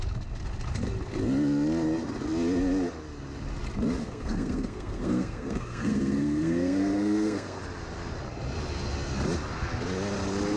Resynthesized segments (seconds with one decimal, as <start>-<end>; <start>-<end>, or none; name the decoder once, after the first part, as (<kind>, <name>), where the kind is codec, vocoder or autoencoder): 4.0-7.6 (codec, SNAC)